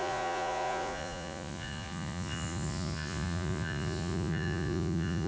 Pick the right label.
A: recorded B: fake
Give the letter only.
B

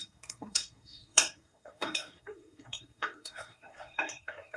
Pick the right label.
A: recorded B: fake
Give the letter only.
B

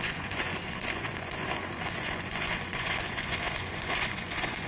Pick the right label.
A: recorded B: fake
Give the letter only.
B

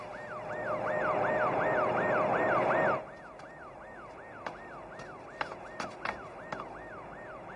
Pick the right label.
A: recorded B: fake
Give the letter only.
A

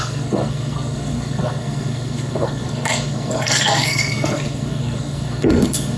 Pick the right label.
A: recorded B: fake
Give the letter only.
B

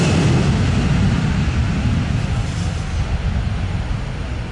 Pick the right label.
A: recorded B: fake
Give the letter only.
A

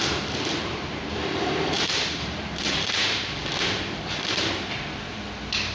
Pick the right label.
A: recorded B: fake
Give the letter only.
B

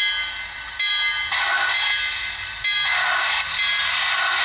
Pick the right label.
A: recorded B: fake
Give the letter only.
A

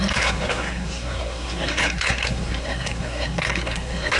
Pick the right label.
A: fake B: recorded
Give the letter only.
A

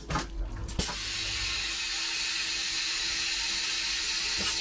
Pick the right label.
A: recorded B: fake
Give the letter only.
A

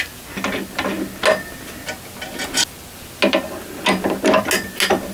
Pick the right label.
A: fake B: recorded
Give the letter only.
B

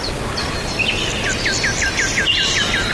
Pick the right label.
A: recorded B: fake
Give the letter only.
A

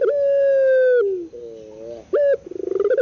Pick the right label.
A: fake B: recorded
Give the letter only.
B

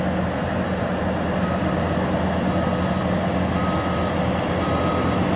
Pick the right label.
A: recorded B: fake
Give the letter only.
A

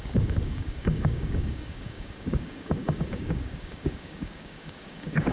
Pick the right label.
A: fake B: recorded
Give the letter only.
A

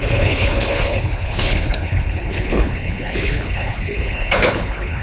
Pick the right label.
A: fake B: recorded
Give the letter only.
A